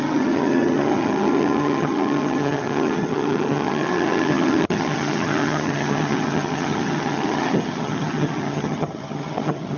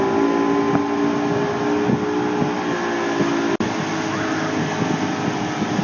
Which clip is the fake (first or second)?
first